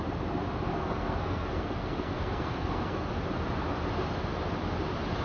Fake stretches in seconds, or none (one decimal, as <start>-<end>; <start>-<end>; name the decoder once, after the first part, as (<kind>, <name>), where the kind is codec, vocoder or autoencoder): 0.7-3.1 (codec, SNAC)